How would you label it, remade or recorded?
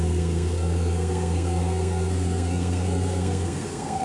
remade